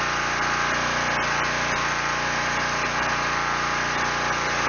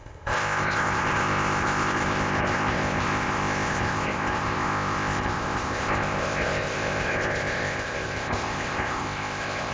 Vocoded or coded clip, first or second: second